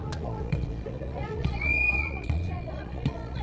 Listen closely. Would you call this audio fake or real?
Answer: fake